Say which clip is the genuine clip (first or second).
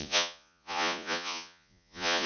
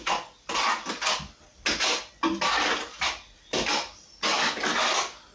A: second